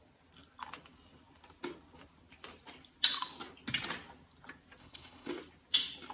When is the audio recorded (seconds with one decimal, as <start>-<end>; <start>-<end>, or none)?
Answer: 0.0-4.8; 5.3-6.1